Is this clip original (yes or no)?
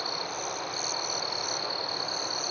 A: yes